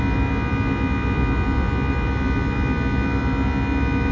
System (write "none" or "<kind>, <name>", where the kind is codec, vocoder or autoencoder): none